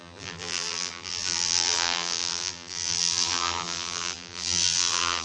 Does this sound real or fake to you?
fake